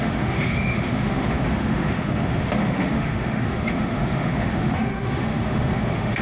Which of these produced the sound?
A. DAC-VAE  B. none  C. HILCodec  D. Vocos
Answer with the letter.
A